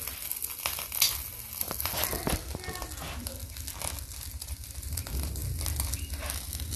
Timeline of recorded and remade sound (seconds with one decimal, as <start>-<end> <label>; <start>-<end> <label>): 0.0-6.8 recorded